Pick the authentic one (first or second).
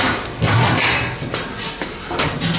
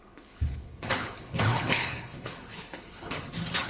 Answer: first